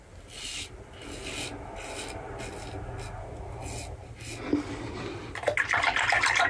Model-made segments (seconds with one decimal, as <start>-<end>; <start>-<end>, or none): none